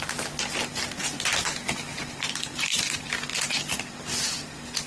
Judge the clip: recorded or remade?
recorded